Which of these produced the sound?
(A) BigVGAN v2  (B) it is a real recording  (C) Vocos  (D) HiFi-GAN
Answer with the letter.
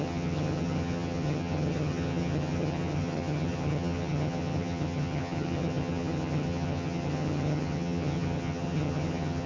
D